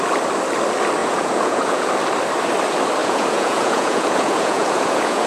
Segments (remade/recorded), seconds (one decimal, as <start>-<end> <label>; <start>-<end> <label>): 0.0-1.0 recorded; 1.0-1.9 remade; 1.9-3.0 recorded; 3.0-5.3 remade